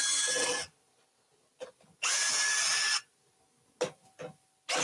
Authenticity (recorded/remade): recorded